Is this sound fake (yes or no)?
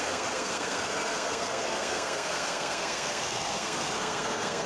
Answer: yes